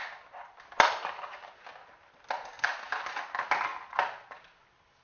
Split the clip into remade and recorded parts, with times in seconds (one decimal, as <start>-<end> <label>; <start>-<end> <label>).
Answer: 0.0-5.0 recorded